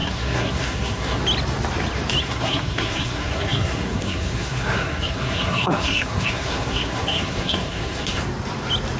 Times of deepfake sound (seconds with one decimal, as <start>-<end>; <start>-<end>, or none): 0.0-1.2; 2.2-8.2